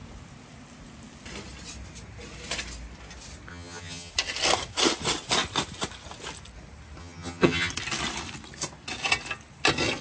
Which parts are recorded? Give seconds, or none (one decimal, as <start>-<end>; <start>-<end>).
0.0-3.5; 4.1-7.0; 7.7-10.0